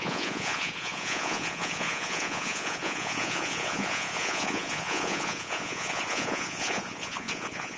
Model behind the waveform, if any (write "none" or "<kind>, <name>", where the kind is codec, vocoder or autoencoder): vocoder, Vocos